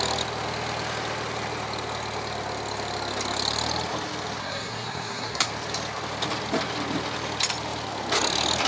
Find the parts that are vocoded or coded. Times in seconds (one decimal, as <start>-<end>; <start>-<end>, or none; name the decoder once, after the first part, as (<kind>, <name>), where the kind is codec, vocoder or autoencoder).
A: 4.4-5.5 (codec, SNAC)